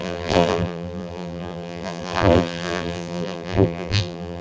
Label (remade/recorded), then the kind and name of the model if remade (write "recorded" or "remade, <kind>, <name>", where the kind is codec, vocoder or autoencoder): remade, vocoder, BigVGAN v2